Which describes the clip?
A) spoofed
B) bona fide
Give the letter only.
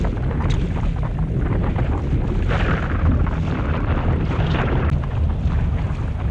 B